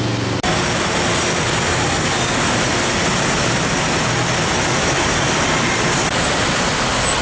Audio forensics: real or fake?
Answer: real